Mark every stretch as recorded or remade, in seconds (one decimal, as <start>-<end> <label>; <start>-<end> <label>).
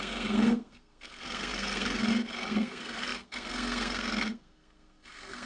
0.0-5.5 remade